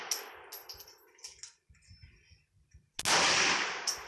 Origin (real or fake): real